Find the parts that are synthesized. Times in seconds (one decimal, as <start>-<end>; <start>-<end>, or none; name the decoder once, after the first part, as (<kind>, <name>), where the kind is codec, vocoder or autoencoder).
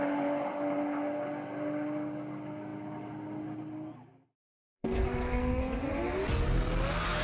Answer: 4.7-5.6 (codec, SNAC)